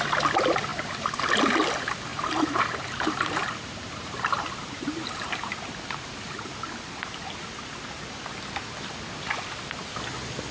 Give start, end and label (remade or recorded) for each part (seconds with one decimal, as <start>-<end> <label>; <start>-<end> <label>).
0.0-2.1 recorded; 2.1-6.1 remade; 6.1-10.5 recorded